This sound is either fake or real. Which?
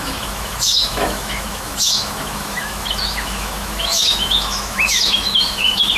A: fake